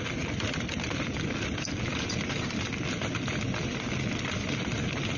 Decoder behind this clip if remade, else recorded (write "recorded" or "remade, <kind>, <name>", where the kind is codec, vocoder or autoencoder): recorded